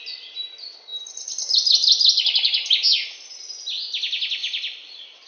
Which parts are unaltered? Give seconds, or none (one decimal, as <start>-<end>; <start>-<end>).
0.0-4.4